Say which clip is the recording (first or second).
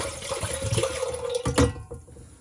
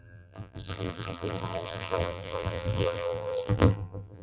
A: first